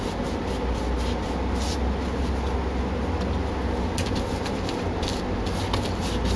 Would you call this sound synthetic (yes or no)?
no